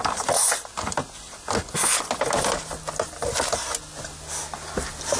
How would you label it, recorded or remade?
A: recorded